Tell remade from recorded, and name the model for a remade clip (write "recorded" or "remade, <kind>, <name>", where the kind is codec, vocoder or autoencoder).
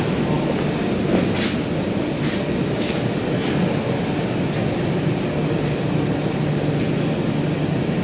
recorded